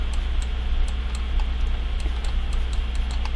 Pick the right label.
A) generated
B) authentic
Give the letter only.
B